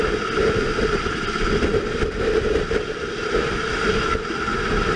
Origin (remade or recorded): recorded